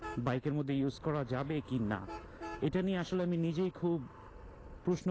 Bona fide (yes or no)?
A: yes